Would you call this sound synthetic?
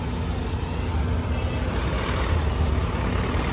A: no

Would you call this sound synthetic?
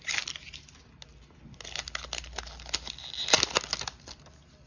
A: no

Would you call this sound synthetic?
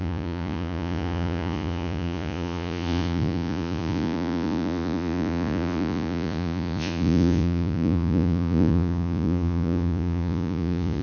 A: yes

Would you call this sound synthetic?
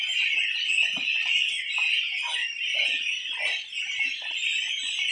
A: no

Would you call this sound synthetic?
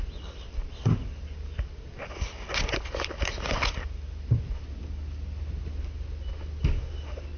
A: no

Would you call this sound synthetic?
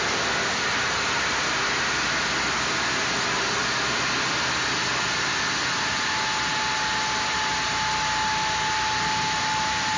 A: no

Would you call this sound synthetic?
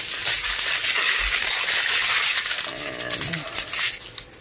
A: no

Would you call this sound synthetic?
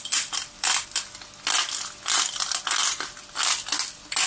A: no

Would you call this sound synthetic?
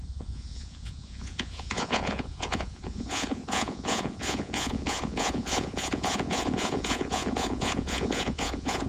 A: yes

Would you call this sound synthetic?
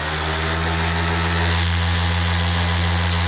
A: no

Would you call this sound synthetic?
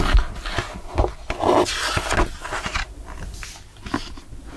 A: no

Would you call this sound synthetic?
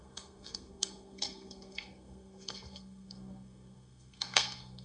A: yes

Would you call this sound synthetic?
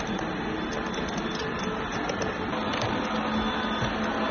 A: no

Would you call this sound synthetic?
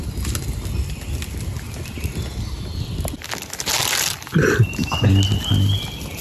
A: no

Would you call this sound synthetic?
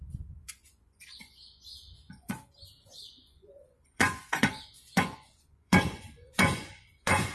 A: yes